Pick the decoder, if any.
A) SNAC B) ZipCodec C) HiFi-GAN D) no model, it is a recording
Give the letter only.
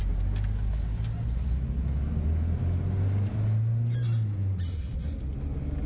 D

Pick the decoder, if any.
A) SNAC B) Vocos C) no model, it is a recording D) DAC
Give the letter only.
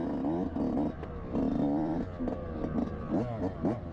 C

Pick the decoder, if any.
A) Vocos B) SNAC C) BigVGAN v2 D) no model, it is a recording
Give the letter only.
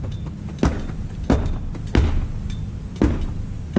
D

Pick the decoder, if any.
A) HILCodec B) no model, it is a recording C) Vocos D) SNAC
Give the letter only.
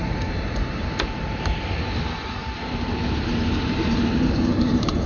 B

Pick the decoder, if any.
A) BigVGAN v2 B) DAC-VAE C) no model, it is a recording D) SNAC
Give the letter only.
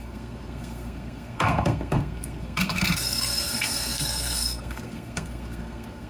D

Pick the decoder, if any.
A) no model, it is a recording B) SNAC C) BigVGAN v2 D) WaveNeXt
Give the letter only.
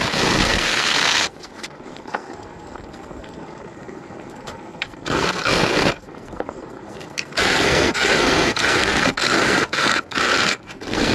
B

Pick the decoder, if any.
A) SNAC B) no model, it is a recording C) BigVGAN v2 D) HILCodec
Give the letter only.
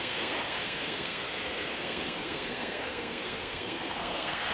A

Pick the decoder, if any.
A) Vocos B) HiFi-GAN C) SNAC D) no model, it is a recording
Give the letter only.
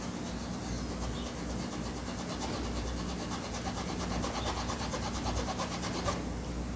D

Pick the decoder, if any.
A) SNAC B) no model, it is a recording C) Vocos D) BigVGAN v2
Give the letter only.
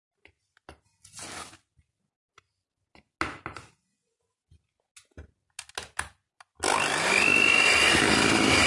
B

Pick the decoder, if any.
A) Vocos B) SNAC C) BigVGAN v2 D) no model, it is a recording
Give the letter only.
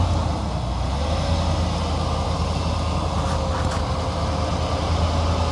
D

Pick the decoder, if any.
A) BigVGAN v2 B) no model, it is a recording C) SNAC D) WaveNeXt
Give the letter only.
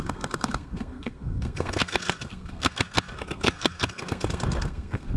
C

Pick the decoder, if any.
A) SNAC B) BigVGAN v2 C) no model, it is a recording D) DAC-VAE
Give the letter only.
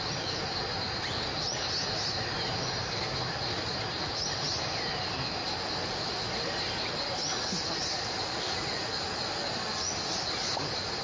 C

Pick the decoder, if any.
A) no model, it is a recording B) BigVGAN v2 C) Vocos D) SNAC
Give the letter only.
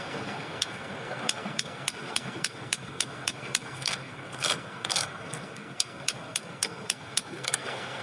D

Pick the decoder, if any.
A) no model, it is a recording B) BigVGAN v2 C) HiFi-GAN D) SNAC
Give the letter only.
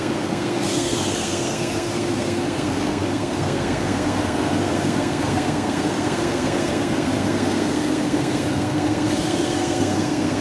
D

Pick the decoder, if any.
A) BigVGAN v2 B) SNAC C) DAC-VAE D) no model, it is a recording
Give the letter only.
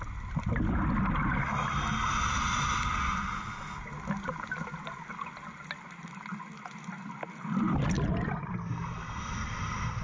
D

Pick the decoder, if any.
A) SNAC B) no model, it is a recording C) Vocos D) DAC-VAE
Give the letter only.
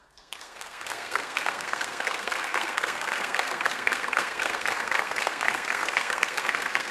A